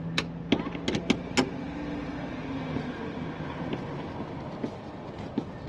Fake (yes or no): no